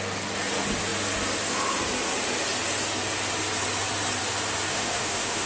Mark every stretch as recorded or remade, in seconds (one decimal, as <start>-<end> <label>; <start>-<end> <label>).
0.0-4.7 recorded; 4.7-5.5 remade